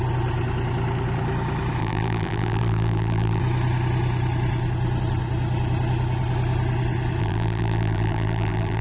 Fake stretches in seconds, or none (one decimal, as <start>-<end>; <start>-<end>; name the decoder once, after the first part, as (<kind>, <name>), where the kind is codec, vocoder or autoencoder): 1.8-3.4 (vocoder, BigVGAN v2); 7.2-8.8